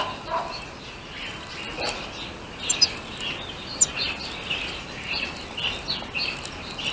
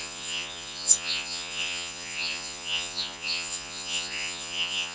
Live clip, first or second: first